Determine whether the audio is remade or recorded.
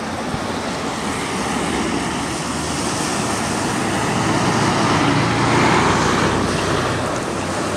recorded